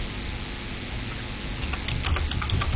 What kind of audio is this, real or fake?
real